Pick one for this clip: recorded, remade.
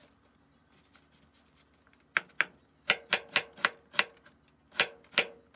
recorded